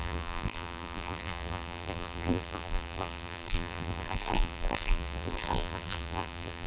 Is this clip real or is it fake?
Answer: fake